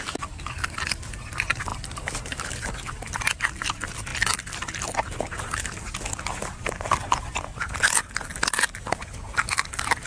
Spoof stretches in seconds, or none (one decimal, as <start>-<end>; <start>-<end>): 1.7-2.5